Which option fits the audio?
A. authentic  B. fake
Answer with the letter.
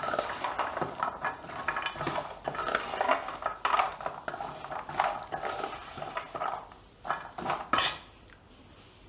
A